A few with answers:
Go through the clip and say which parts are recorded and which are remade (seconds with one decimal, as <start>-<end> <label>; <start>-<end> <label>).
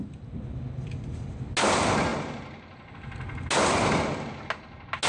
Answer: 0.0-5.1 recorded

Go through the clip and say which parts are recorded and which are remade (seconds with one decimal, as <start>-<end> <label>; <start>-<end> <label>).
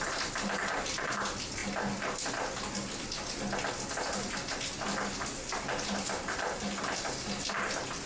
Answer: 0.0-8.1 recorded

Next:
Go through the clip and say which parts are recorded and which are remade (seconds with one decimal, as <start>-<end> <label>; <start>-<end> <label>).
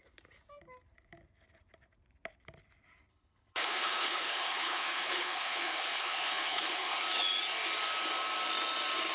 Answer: 0.0-3.1 recorded; 3.1-7.0 remade; 7.0-9.1 recorded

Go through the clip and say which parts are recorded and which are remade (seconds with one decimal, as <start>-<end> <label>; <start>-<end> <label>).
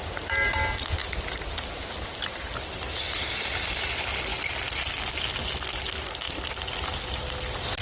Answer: 0.0-0.5 remade; 0.5-7.8 recorded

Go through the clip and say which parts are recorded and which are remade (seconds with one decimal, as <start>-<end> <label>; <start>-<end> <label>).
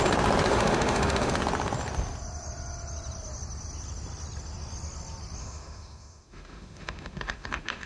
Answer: 0.0-0.5 recorded; 0.5-1.3 remade; 1.3-5.4 recorded; 5.4-7.9 remade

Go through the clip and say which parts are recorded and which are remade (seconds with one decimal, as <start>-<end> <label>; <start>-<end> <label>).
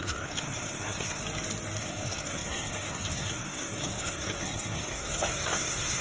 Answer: 0.0-1.2 remade; 1.2-1.8 recorded; 1.8-6.0 remade